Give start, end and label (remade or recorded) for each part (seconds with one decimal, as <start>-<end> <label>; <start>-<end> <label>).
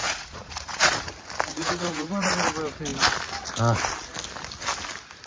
0.0-0.9 remade; 0.9-1.5 recorded; 1.5-2.3 remade; 2.3-5.3 recorded